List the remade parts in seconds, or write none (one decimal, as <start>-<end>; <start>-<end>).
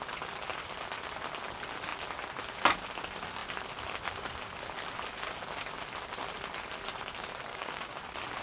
7.5-8.0